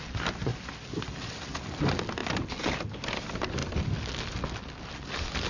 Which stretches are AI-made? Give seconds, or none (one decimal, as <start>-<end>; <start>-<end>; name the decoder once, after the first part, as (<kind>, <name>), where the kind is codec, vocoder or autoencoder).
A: none